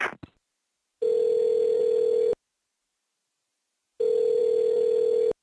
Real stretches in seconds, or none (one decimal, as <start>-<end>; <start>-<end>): 0.0-5.4